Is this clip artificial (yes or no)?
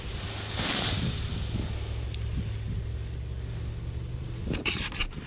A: no